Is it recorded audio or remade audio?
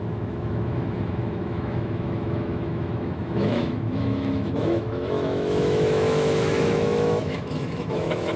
remade